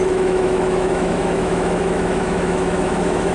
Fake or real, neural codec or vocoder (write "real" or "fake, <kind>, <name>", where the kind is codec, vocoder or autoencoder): fake, autoencoder, DAC-VAE